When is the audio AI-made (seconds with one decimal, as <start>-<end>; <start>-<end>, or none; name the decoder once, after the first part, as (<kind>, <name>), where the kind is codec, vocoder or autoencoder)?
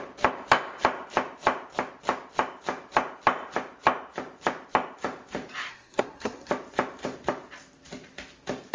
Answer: 5.7-6.5 (codec, SNAC)